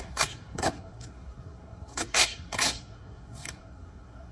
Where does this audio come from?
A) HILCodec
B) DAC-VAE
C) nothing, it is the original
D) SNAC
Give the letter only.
D